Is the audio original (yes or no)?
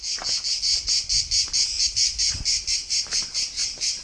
yes